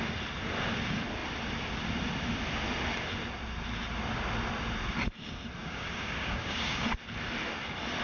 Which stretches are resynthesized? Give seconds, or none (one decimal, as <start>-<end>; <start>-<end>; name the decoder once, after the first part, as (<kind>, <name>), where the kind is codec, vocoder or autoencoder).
5.6-6.8 (codec, DAC)